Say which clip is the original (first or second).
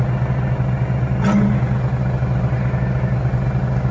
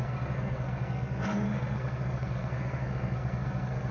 first